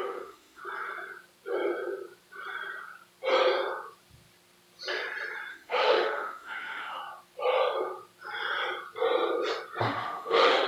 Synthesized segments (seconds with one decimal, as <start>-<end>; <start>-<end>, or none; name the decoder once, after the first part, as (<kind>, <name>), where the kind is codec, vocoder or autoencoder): 0.0-0.6 (autoencoder, DAC-VAE); 5.5-7.0; 9.8-10.7